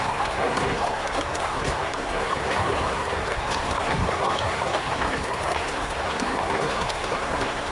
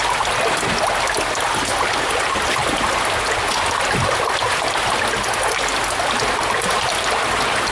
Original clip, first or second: second